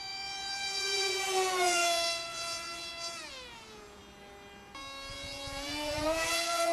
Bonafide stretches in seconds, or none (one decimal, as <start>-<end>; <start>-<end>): 4.0-5.1

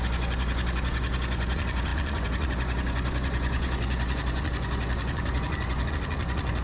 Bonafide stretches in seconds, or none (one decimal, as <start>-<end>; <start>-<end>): none

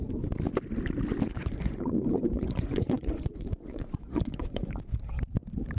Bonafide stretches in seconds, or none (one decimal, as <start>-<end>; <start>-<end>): 0.0-1.3; 4.8-5.8